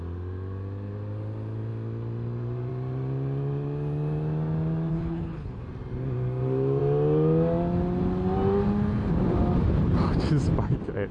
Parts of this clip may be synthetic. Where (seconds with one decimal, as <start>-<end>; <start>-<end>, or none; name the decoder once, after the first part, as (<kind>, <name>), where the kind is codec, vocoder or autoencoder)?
4.9-5.6 (codec, HILCodec)